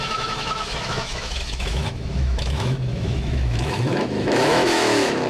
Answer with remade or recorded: remade